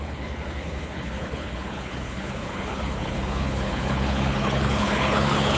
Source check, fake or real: fake